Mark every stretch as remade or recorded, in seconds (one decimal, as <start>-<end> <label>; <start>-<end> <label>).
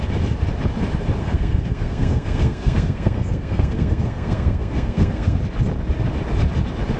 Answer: 0.0-1.2 recorded; 1.2-5.4 remade; 5.4-7.0 recorded